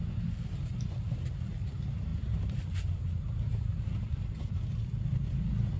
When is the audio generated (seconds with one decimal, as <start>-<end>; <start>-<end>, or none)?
none